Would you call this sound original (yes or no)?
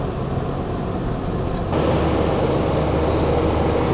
yes